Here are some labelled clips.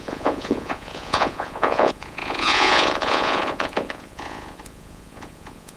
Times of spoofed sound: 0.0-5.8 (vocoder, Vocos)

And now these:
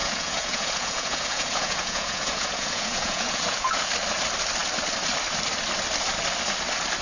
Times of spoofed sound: 0.0-3.9 (vocoder, Vocos)

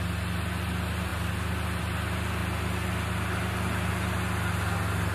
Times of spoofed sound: none